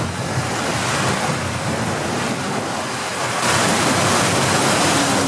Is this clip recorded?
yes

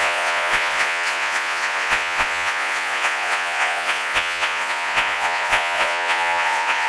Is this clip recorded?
no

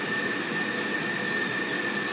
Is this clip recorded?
yes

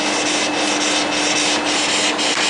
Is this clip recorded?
yes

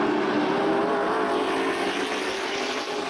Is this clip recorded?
yes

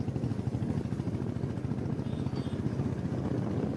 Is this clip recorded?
yes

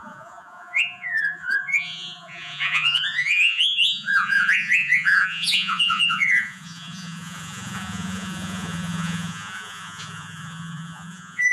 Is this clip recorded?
no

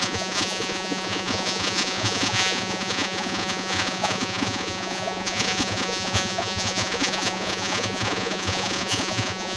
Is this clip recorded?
no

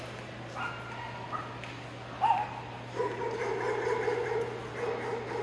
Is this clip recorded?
yes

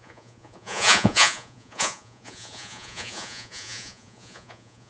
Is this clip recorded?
no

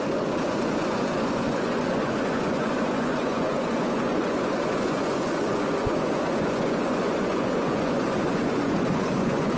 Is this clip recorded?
no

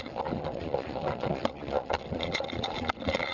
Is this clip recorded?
no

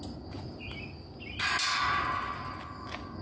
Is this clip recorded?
yes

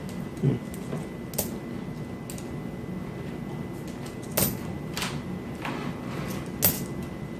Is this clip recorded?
yes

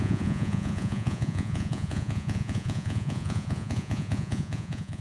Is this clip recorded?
no